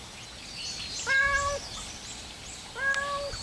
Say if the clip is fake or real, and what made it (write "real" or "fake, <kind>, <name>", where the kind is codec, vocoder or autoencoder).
real